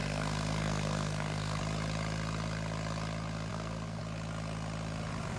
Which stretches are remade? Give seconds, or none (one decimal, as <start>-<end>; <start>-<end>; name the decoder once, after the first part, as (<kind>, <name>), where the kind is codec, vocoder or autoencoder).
0.0-1.6 (codec, SNAC); 3.5-4.0